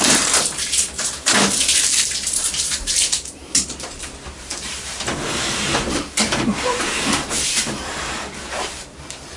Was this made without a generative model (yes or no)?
no